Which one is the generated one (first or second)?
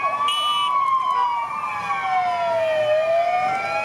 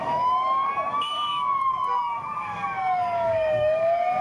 second